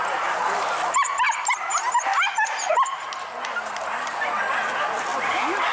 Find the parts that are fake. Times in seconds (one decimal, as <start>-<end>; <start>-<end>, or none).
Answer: none